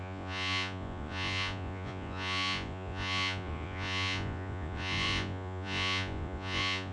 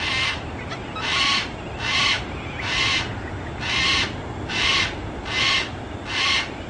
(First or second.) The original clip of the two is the second